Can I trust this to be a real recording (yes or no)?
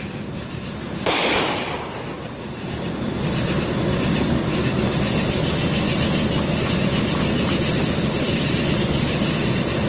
yes